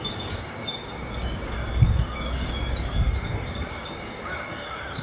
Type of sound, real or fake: fake